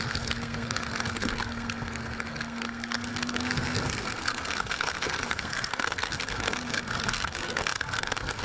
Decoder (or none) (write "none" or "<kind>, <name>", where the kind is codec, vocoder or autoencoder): codec, SNAC